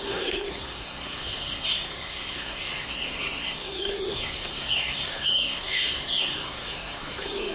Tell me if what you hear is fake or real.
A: fake